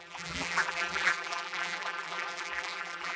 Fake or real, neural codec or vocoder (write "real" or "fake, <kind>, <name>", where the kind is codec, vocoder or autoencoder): fake, vocoder, BigVGAN v2